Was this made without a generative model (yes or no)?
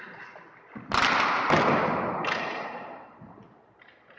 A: yes